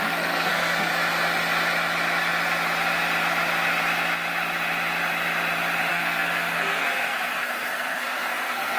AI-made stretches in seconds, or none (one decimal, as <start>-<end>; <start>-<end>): 0.0-0.9; 5.9-8.8